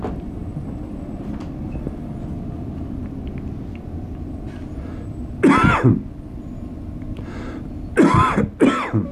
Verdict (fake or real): real